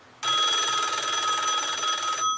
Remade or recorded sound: recorded